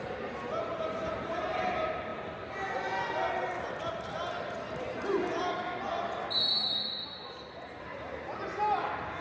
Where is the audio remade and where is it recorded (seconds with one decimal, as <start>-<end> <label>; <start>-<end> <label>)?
0.0-9.2 recorded